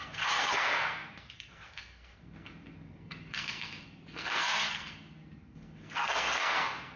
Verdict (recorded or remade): remade